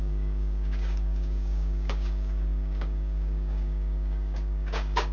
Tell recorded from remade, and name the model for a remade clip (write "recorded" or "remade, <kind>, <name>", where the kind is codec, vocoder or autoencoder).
remade, codec, DAC